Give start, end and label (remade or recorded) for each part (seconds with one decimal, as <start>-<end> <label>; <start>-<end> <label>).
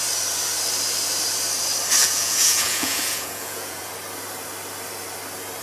0.0-2.0 recorded; 2.0-3.9 remade; 3.9-5.6 recorded